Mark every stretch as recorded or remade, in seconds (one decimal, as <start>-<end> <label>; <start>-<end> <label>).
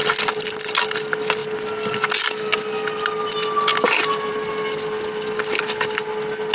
0.0-6.5 recorded